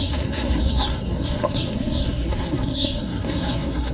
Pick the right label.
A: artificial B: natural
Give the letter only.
A